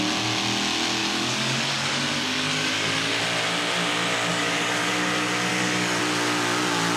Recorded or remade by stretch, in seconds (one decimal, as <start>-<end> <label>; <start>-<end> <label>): 0.0-1.0 recorded; 1.0-3.2 remade; 3.2-4.3 recorded; 4.3-4.9 remade; 4.9-5.5 recorded; 5.5-6.0 remade; 6.0-7.0 recorded